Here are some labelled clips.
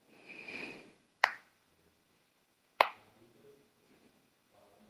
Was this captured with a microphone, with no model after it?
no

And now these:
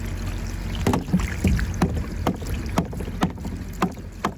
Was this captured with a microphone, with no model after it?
yes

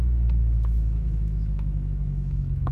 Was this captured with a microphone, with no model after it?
no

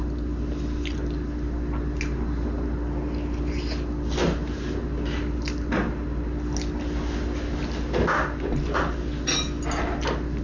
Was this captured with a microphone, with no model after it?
yes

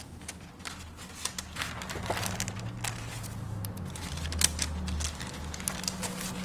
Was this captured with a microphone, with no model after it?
yes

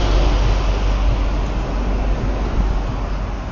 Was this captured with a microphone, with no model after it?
yes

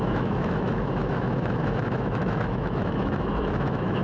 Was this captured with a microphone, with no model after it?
no